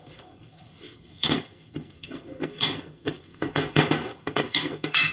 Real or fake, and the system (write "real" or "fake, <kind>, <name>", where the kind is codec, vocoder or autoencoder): fake, codec, SNAC